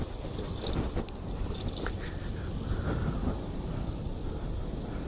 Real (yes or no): yes